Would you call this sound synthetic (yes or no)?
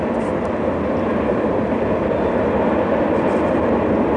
no